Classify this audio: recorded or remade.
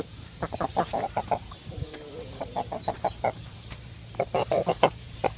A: remade